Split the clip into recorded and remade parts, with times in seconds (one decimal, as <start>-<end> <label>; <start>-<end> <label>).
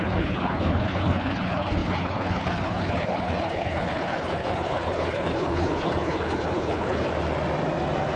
0.0-7.1 remade; 7.1-8.2 recorded